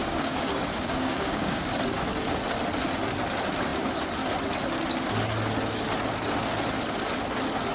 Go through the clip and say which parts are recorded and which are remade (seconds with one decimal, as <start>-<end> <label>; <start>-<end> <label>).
0.0-1.6 remade; 1.6-7.7 recorded